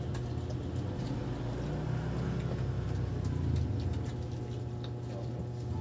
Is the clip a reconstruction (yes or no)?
no